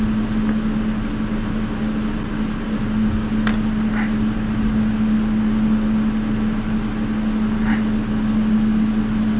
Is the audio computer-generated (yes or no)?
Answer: no